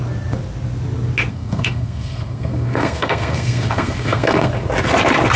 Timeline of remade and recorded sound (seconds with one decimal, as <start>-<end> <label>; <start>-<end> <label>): 0.0-1.3 recorded; 1.3-4.5 remade; 4.5-5.4 recorded